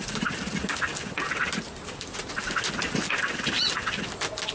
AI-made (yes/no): no